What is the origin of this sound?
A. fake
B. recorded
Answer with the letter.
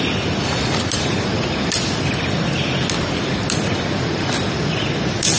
B